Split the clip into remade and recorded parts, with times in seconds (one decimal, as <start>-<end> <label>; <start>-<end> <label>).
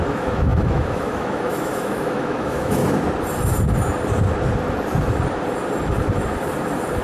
0.0-2.8 remade; 2.8-7.0 recorded